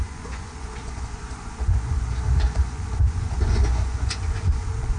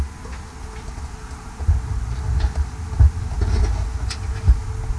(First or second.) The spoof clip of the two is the first